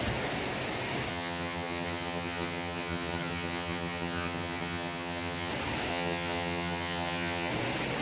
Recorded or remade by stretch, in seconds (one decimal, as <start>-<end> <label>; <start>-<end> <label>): 0.0-1.1 recorded; 1.1-5.5 remade; 5.5-5.9 recorded; 5.9-7.5 remade; 7.5-8.0 recorded